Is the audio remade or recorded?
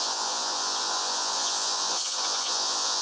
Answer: remade